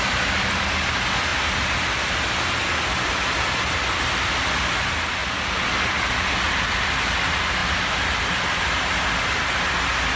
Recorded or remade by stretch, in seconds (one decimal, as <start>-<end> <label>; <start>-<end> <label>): 0.0-10.2 recorded